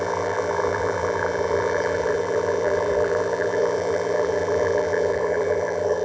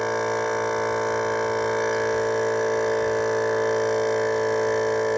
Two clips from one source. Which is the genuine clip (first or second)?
second